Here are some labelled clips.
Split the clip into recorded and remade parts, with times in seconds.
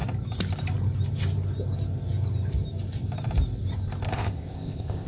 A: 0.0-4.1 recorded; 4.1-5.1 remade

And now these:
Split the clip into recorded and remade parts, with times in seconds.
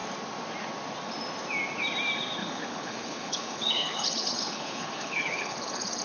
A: 0.0-2.4 recorded; 2.4-6.0 remade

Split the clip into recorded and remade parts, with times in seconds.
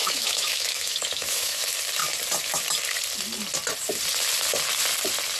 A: 0.0-1.6 remade; 1.6-5.4 recorded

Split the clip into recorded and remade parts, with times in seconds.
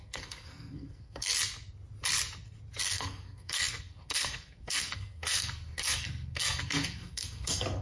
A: 0.0-1.3 remade; 1.3-2.8 recorded; 2.8-7.8 remade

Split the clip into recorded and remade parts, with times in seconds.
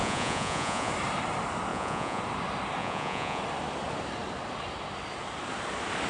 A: 0.0-0.9 remade; 0.9-1.7 recorded; 1.7-2.2 remade; 2.2-2.8 recorded; 2.8-3.4 remade; 3.4-6.1 recorded